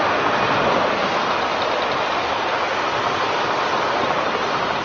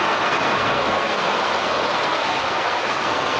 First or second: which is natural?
first